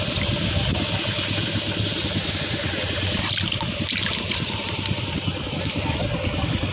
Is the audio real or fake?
real